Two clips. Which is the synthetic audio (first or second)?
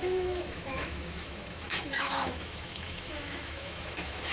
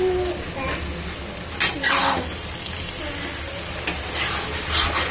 first